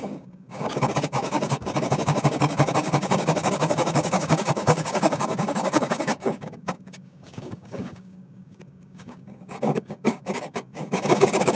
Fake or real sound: fake